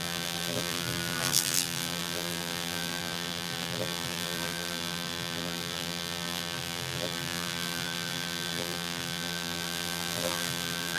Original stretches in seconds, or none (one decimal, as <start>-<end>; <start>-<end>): none

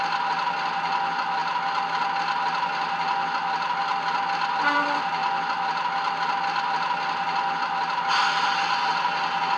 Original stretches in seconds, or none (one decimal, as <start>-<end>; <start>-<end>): 0.0-9.6

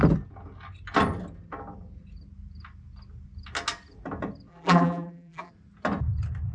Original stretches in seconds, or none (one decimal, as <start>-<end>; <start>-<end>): 0.0-4.5; 5.5-6.5

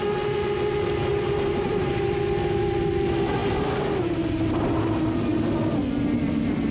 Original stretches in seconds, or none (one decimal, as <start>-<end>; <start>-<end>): 0.0-1.1; 1.9-6.7

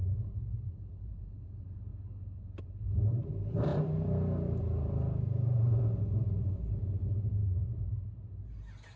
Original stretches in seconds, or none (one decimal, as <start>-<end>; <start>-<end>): 1.9-2.6; 7.6-9.0

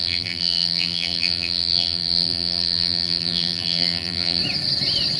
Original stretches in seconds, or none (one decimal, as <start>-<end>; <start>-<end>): 4.4-5.2

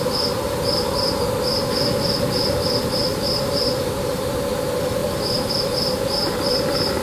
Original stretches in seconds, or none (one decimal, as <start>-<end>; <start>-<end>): 0.0-5.0; 5.5-7.0